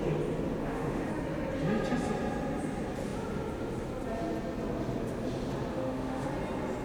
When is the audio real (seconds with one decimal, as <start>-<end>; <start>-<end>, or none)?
0.0-0.6; 1.1-5.7; 6.3-6.8

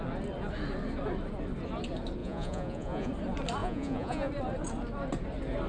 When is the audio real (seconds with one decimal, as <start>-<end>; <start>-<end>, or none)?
0.0-2.2; 3.1-3.6; 4.3-5.7